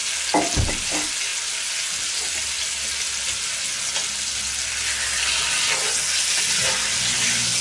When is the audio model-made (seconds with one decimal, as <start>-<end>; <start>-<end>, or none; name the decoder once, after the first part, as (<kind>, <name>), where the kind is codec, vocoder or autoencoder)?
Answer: none